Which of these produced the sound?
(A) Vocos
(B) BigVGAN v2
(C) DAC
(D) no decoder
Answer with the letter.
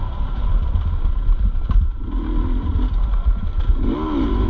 B